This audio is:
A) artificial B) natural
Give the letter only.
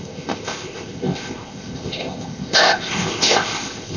A